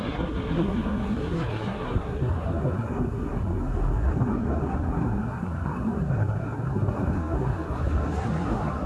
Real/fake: fake